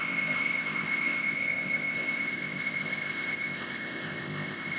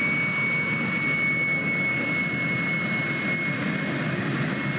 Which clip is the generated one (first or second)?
first